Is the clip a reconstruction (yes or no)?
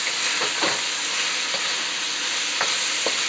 no